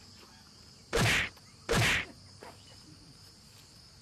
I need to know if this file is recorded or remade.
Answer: recorded